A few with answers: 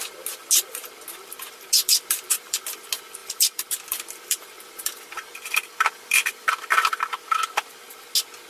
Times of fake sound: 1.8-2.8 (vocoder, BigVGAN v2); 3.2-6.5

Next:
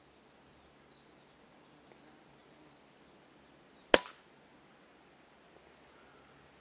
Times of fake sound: none

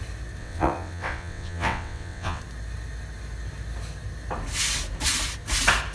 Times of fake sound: 0.4-2.4 (vocoder, WaveNeXt)